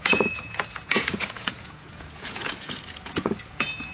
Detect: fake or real fake